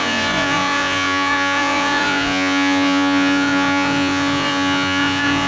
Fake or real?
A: fake